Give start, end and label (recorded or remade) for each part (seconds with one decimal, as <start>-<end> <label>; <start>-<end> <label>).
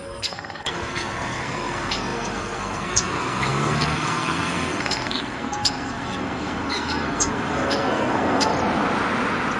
0.0-8.5 remade; 8.5-9.6 recorded